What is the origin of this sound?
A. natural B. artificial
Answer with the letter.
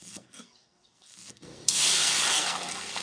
B